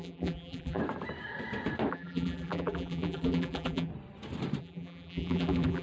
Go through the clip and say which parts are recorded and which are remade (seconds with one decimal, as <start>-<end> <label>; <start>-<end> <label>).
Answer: 0.0-0.8 remade; 0.8-1.9 recorded; 1.9-3.9 remade; 3.9-4.6 recorded; 4.6-5.8 remade